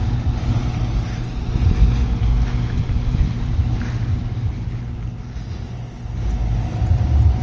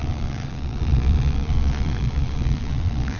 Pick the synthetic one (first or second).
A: second